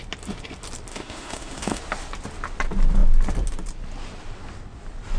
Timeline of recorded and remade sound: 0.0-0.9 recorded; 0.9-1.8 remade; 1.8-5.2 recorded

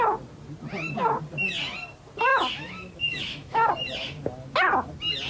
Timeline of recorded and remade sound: 0.0-2.3 recorded; 2.3-3.7 remade; 3.7-5.3 recorded

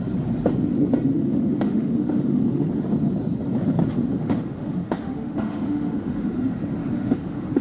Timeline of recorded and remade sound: 0.0-1.1 recorded; 1.1-2.7 remade; 2.7-4.1 recorded; 4.1-6.3 remade; 6.3-6.8 recorded; 6.8-7.6 remade

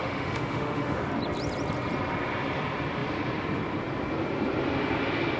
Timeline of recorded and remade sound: 0.0-1.0 remade; 1.0-5.4 recorded

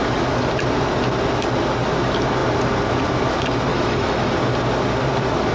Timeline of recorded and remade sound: 0.0-3.7 recorded; 3.7-4.3 remade; 4.3-5.5 recorded

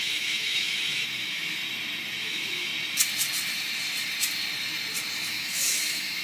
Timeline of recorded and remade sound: 0.0-1.6 remade; 1.6-2.2 recorded; 2.2-2.7 remade; 2.7-5.3 recorded; 5.3-6.2 remade

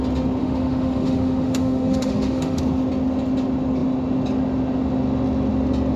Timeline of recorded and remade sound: 0.0-0.4 recorded; 0.4-2.6 remade; 2.6-6.0 recorded

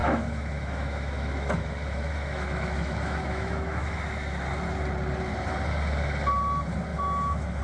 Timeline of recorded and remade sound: 0.0-4.0 remade; 4.0-6.9 recorded; 6.9-7.6 remade